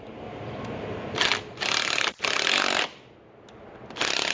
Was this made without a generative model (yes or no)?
yes